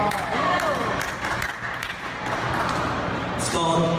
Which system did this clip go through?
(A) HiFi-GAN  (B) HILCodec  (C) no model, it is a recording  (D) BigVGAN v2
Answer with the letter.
D